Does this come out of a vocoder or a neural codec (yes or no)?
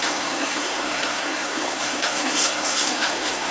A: yes